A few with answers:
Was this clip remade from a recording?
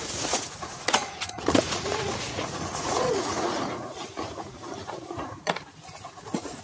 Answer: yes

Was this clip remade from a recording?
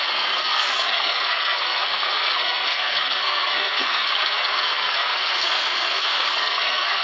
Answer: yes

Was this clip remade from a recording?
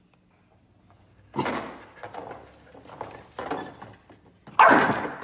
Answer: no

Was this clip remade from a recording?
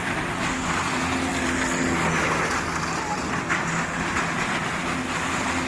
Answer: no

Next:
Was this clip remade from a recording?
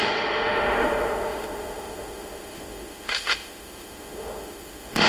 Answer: yes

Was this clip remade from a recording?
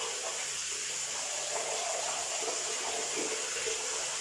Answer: no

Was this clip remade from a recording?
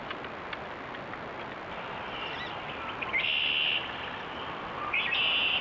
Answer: no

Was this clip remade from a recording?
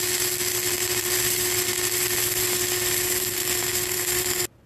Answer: no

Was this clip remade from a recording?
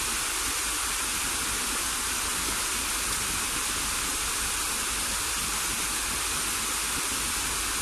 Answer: no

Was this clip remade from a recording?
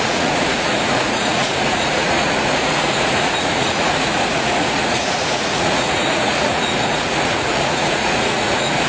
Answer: yes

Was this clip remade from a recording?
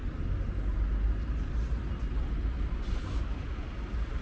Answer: no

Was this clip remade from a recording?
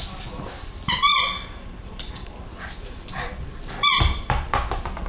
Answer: yes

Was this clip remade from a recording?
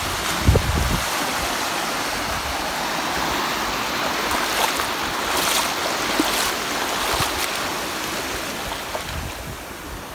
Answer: no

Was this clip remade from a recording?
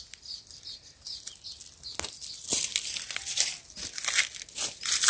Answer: no